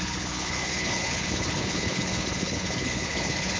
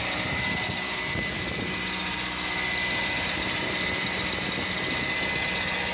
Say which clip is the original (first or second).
second